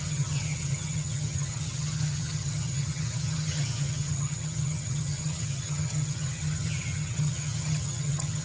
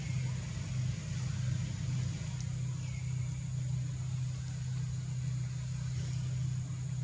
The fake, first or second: first